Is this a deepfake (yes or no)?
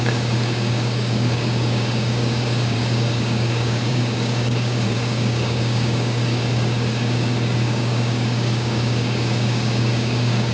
yes